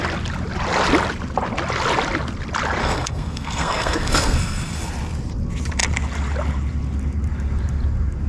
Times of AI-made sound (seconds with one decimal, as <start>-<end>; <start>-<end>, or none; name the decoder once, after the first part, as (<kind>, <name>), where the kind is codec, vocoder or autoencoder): 2.8-4.9 (codec, SNAC)